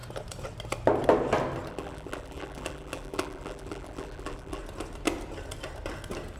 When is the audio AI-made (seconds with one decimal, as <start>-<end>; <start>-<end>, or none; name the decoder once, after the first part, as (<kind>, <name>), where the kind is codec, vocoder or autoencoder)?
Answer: 1.7-4.6 (vocoder, BigVGAN v2)